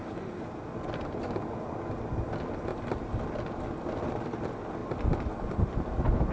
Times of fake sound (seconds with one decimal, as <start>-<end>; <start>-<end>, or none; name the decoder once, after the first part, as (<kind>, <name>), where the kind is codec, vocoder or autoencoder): none